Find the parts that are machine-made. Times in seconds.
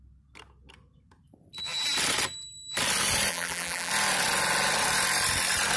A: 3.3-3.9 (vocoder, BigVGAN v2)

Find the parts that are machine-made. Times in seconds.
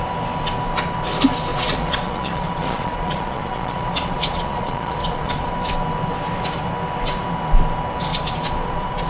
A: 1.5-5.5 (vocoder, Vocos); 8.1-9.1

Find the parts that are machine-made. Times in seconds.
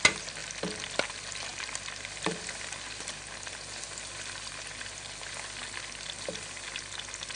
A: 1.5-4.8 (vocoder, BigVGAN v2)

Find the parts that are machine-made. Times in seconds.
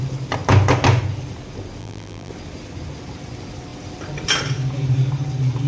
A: 1.8-2.3 (vocoder, BigVGAN v2)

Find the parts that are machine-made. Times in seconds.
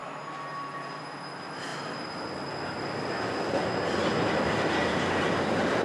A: none